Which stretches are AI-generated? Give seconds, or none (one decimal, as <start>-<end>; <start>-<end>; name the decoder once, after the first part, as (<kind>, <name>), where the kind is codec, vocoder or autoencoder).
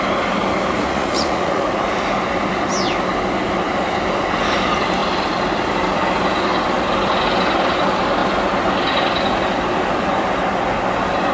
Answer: 0.8-1.6 (vocoder, Vocos)